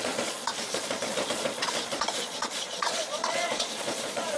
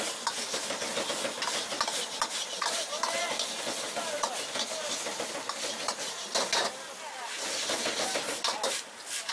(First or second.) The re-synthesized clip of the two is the first